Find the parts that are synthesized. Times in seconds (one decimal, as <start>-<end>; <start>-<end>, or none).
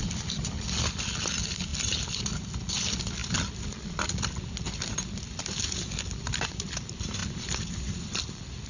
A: 7.2-8.2